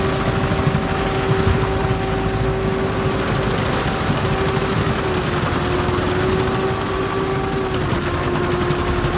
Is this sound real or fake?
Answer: real